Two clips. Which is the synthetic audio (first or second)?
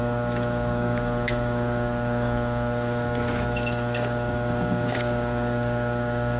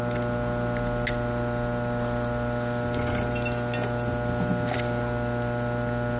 first